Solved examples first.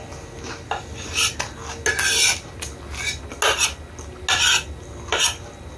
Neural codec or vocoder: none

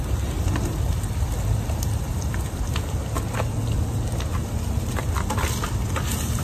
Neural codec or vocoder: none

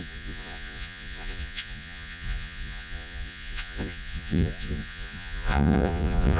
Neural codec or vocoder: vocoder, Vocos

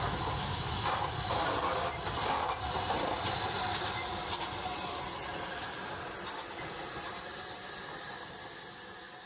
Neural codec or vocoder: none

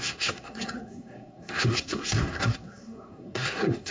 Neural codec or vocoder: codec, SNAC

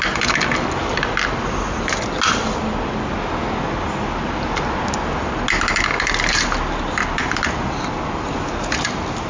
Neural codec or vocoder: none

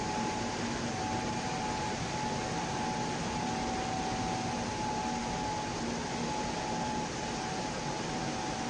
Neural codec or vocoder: none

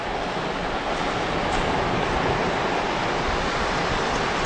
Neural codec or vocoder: none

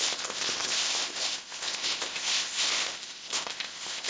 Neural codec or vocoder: codec, ZipCodec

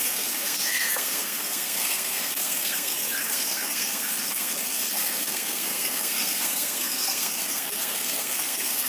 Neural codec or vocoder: codec, SNAC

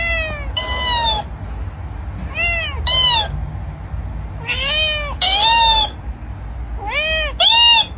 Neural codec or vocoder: none